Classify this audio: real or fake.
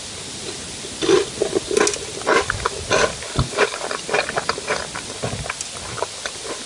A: real